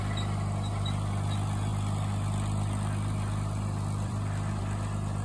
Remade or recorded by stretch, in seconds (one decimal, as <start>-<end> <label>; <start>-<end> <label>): 0.0-1.7 recorded; 1.7-4.6 remade; 4.6-5.2 recorded